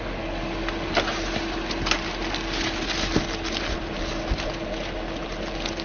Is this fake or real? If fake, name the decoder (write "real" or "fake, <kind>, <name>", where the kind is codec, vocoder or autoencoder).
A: real